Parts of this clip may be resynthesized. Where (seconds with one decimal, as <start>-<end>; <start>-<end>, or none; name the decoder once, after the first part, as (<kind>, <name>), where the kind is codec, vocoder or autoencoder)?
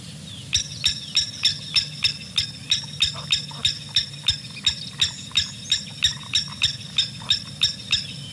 none